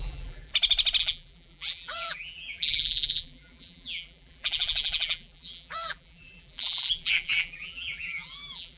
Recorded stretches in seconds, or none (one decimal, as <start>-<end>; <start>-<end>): 0.5-1.0